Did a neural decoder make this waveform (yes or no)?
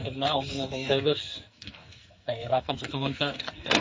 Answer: yes